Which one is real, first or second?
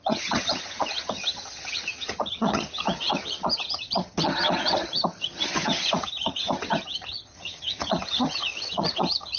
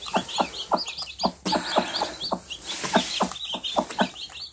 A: second